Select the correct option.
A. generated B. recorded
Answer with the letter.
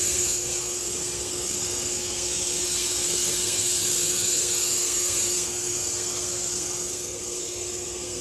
A